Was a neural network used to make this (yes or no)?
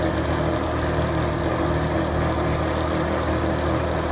no